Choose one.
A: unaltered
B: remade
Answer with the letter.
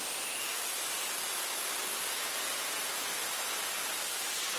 B